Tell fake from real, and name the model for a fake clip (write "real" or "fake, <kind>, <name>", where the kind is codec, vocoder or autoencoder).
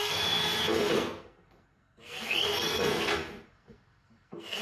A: fake, codec, SNAC